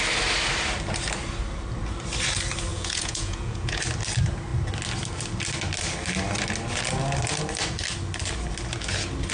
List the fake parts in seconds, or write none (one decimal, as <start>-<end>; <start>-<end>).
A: 2.7-3.8

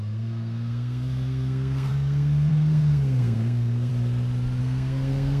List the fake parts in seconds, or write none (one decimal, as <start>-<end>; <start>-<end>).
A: 0.0-3.9; 4.6-5.4

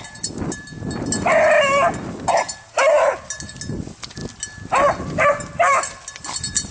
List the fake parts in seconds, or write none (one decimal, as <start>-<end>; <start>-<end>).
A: none

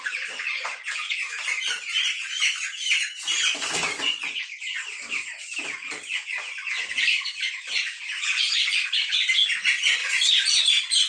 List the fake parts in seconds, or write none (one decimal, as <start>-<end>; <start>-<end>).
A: 10.0-10.6

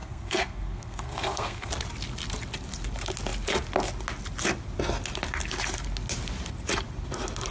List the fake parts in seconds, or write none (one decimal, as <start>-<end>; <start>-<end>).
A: 0.0-1.7

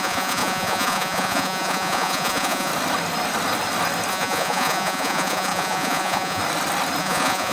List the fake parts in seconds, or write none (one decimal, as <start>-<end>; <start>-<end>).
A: 0.0-2.7; 4.1-6.4; 7.0-7.5

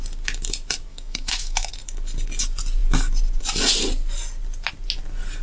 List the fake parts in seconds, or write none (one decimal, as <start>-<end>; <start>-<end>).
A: 0.9-1.7